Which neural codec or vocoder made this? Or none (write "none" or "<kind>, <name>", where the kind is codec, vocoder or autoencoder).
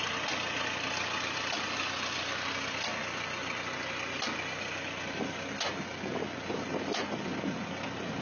none